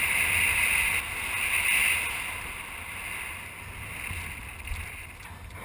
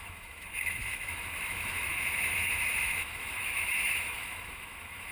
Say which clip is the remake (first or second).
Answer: second